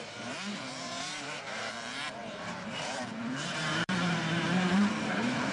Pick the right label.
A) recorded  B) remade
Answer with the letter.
B